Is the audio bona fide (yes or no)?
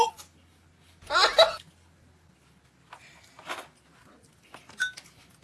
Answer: yes